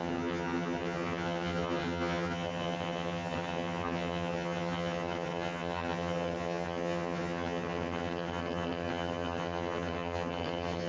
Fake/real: fake